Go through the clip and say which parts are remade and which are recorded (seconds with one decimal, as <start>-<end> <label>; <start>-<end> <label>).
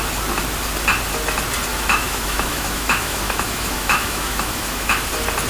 0.0-1.7 recorded; 1.7-5.0 remade; 5.0-5.5 recorded